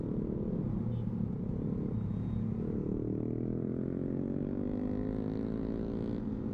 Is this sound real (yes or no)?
yes